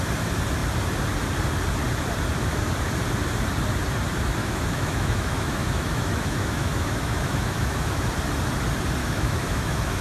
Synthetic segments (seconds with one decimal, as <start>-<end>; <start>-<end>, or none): 4.4-8.1; 9.0-10.0